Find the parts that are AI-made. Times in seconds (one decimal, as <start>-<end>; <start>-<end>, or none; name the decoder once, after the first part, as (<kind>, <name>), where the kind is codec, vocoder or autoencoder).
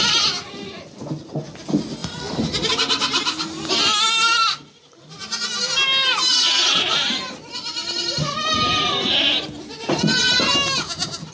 none